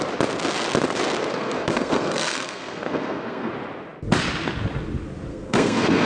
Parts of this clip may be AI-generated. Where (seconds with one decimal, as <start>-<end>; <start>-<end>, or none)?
1.3-3.5; 5.3-6.1